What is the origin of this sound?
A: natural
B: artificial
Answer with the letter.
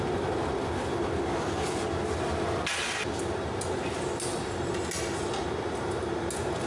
A